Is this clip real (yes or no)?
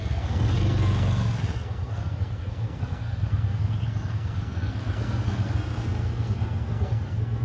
no